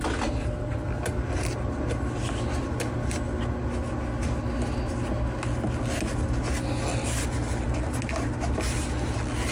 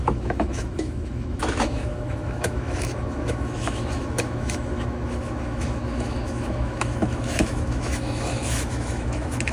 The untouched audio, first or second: first